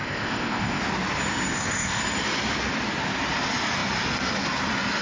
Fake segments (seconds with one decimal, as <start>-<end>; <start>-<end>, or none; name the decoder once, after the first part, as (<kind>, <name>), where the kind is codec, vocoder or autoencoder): 0.0-0.8 (codec, ZipCodec); 1.5-2.0